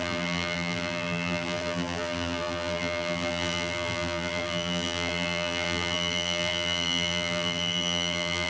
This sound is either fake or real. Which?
fake